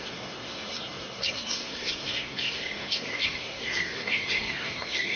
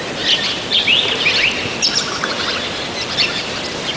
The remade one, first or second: first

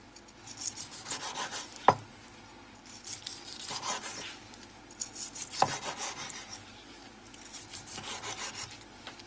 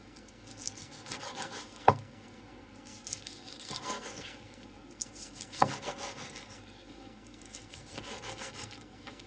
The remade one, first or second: second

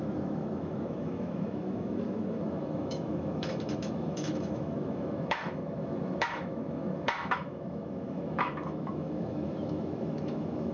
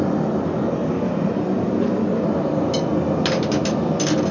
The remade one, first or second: first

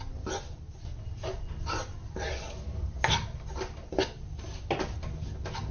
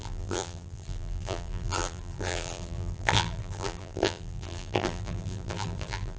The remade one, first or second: second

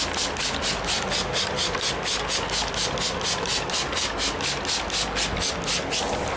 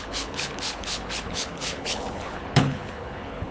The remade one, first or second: second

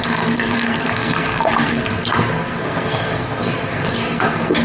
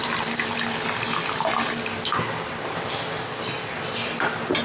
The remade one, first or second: first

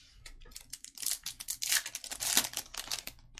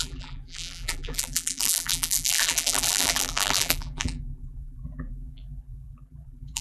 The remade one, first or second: second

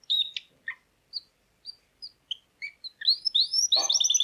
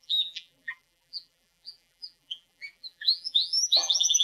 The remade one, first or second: second